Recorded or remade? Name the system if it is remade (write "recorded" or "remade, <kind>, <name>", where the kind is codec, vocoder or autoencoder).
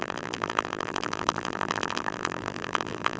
remade, vocoder, BigVGAN v2